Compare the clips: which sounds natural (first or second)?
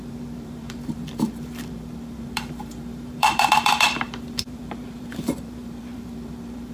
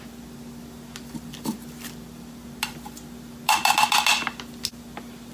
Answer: second